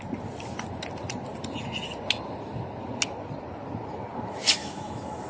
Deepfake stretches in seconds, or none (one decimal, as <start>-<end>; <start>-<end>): 4.6-5.3